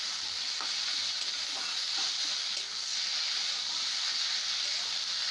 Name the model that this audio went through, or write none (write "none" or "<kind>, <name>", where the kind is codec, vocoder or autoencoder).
none